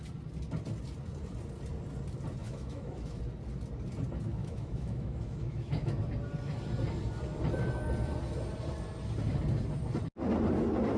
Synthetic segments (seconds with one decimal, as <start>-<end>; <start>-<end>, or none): 2.4-3.2; 4.4-6.0

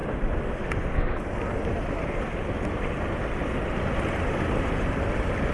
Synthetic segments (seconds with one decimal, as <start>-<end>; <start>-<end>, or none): none

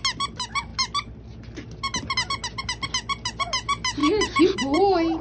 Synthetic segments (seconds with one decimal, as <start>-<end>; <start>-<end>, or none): 4.0-5.2

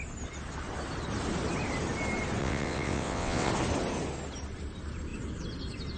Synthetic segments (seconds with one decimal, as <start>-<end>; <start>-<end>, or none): 2.4-3.5

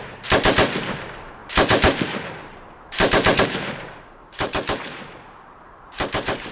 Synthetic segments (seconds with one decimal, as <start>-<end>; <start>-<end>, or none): 0.0-6.5

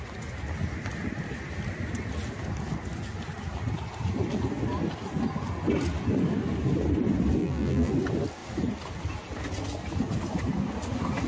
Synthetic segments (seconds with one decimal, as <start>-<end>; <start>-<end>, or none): 7.4-7.9

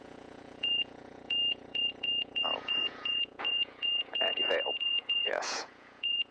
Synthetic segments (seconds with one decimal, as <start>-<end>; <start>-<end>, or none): 0.0-6.3

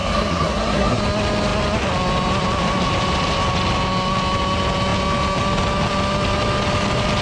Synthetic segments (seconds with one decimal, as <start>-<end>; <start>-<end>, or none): 0.0-1.0